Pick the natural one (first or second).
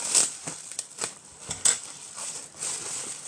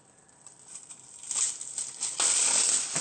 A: second